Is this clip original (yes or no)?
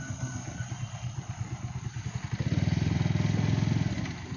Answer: yes